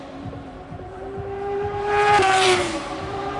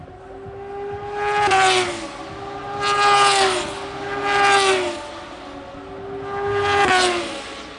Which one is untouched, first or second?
second